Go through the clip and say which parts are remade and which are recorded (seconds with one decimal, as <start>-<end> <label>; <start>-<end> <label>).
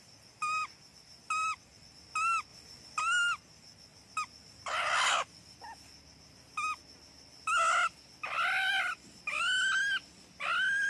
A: 0.0-7.8 recorded; 7.8-8.7 remade; 8.7-10.9 recorded